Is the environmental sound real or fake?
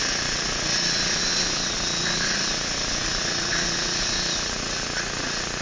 fake